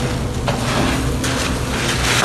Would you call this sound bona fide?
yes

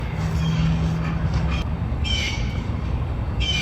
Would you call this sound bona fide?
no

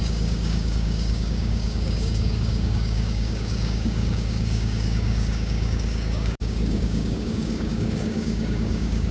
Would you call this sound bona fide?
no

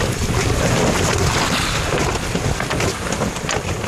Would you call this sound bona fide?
no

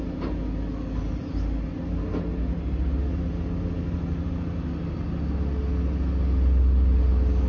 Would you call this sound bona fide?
yes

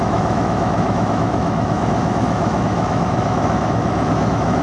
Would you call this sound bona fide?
no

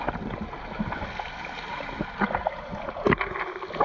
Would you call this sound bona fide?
yes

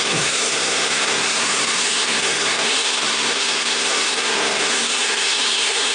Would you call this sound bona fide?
no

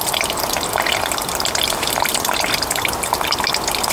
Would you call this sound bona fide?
yes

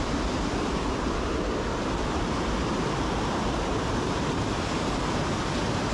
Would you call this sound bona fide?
yes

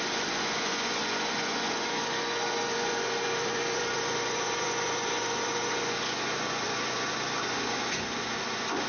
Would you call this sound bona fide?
no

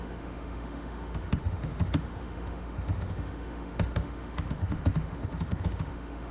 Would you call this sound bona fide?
no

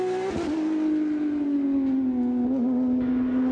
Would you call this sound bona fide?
yes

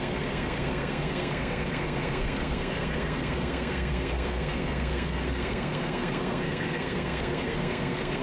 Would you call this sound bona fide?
no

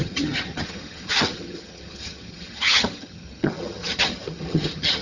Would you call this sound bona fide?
no